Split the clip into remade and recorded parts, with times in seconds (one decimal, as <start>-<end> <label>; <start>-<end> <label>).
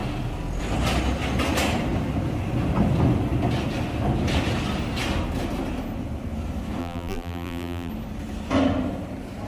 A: 0.0-6.8 recorded; 6.8-7.9 remade; 7.9-9.5 recorded